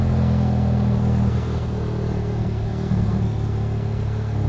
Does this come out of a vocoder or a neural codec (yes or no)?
yes